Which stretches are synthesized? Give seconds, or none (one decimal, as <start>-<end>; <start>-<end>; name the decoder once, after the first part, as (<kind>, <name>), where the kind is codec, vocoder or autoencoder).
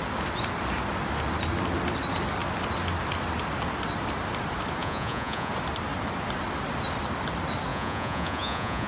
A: 4.8-5.5 (vocoder, Vocos); 7.7-8.9